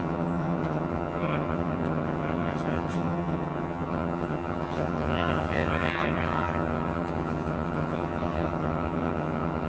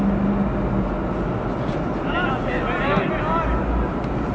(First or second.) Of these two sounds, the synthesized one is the first